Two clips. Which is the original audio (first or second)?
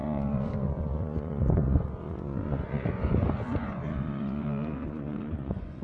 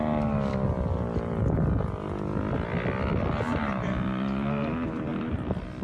second